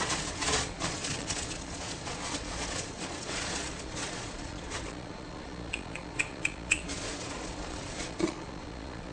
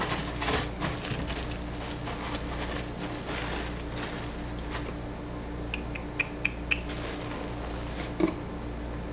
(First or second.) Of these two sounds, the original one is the second